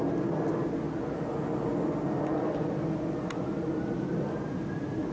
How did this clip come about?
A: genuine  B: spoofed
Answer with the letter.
A